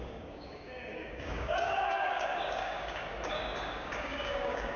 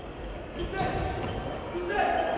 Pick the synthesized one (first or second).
first